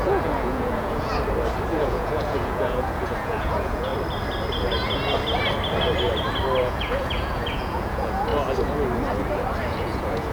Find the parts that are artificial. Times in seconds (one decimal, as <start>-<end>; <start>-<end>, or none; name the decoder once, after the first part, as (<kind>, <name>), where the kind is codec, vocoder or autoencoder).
0.0-1.1 (vocoder, Vocos); 1.7-3.9; 6.6-8.3; 9.6-10.3